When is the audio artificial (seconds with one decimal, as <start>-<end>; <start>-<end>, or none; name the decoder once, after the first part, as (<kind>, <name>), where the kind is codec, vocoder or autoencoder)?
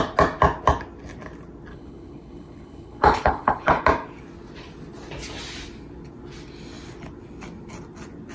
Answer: 1.7-3.8 (codec, HILCodec)